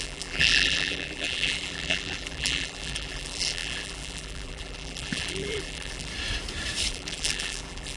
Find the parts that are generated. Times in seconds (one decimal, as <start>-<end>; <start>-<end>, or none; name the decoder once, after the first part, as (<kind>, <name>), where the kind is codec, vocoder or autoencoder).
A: 0.0-6.1 (vocoder, BigVGAN v2); 6.9-8.0